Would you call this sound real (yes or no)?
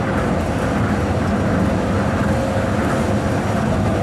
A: yes